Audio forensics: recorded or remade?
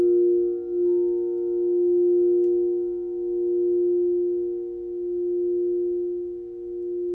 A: recorded